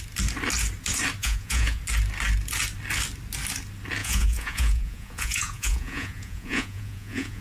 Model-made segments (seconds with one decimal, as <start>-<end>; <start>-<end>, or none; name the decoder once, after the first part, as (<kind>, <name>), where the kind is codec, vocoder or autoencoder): 1.2-1.8 (vocoder, Vocos); 4.0-7.4